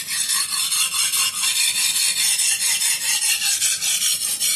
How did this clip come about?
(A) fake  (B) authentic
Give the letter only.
B